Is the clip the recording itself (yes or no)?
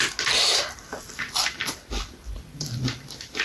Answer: yes